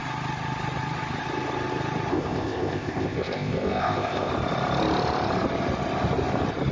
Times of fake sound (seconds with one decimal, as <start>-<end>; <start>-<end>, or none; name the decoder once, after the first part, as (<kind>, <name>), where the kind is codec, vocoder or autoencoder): 2.1-4.3 (codec, ZipCodec)